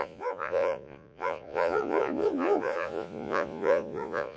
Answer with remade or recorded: remade